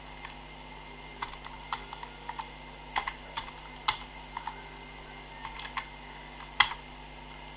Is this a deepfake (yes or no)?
no